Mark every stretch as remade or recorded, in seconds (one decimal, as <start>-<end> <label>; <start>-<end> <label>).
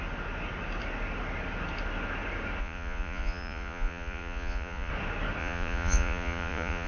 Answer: 0.0-2.6 recorded; 2.6-4.9 remade; 4.9-5.4 recorded; 5.4-6.9 remade